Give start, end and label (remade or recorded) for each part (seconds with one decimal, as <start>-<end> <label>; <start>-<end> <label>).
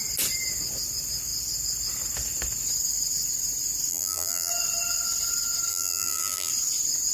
0.0-3.9 recorded; 3.9-4.5 remade; 4.5-5.7 recorded; 5.7-6.5 remade; 6.5-7.1 recorded